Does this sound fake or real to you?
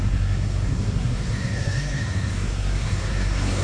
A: fake